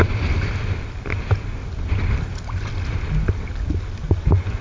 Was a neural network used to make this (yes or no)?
no